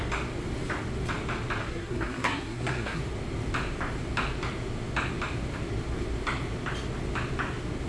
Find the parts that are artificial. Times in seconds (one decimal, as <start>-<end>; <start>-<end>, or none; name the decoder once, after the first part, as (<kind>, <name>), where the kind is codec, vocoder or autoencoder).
1.6-3.0 (codec, SNAC)